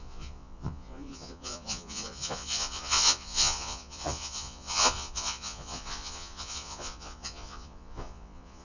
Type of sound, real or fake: fake